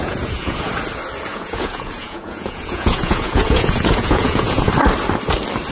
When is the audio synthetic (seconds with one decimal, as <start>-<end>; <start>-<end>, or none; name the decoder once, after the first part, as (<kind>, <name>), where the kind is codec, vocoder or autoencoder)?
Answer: 0.0-0.7 (vocoder, Vocos); 1.3-4.7